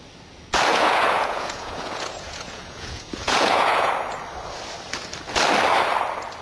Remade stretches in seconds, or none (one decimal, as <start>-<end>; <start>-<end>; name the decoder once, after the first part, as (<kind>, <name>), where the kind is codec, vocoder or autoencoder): 0.7-3.9 (vocoder, Vocos)